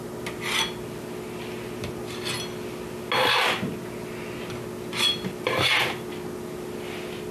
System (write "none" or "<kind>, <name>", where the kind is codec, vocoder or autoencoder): none